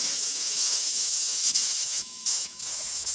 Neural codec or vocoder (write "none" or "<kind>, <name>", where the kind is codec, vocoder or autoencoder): autoencoder, DAC-VAE